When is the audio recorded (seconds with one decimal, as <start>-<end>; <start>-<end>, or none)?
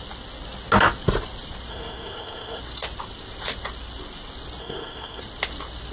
0.0-1.7; 2.6-4.6; 5.2-5.9